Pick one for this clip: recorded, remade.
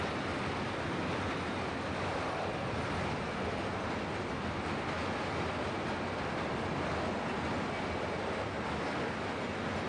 recorded